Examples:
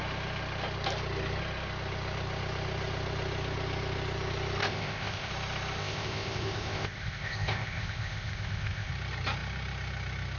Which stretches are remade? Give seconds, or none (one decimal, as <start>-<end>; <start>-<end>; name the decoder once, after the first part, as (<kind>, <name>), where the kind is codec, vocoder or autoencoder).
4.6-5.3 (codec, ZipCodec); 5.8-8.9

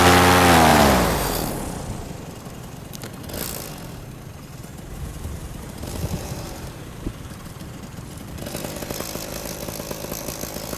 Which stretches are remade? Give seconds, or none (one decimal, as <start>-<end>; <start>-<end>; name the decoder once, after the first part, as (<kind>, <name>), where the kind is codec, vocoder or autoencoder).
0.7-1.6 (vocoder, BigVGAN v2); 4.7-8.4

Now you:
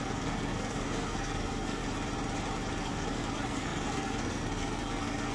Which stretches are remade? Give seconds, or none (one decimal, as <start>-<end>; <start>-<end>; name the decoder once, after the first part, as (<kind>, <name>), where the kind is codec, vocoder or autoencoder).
0.0-1.8 (codec, SNAC); 2.8-5.3

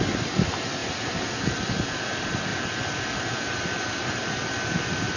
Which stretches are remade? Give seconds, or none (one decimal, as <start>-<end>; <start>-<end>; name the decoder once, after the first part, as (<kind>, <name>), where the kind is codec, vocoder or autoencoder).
none